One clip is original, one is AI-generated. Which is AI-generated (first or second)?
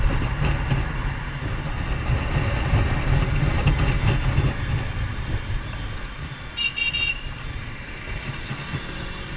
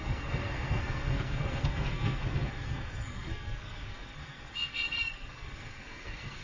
second